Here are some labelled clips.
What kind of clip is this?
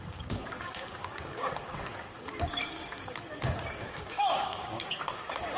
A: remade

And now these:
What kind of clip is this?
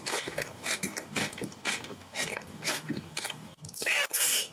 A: remade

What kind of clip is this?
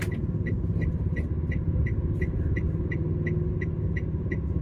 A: recorded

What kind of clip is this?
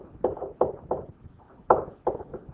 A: recorded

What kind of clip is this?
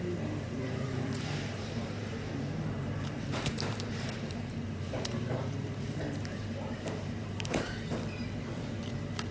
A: remade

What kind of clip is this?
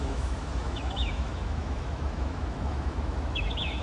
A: remade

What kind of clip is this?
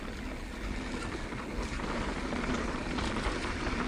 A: recorded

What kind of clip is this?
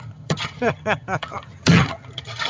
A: remade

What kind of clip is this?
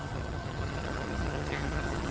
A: remade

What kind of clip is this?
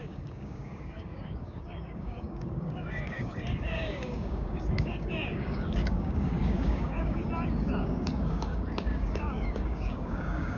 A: remade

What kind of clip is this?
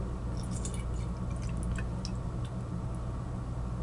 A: recorded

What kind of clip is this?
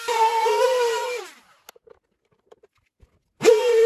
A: recorded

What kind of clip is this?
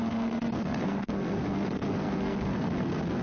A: remade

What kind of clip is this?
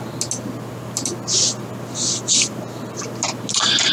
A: recorded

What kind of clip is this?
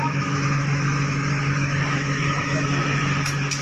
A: remade